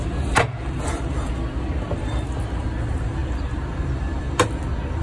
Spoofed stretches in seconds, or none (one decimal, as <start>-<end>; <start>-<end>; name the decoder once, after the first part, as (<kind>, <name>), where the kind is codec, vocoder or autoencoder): none